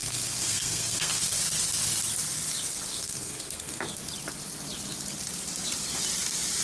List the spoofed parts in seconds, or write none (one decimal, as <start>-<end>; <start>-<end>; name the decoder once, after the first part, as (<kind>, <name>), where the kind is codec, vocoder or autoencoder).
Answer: 0.0-1.3 (codec, SNAC); 2.9-4.0